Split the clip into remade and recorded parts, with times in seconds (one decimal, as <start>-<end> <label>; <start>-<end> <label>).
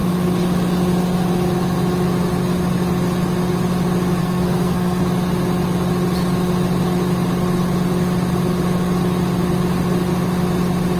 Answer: 0.0-4.2 recorded; 4.2-5.0 remade; 5.0-11.0 recorded